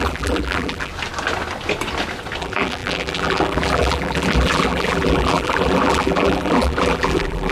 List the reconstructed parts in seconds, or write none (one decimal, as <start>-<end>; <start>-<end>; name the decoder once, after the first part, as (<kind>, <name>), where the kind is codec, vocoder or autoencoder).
0.0-0.9 (vocoder, BigVGAN v2); 2.4-7.5